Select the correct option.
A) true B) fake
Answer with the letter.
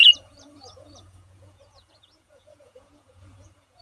B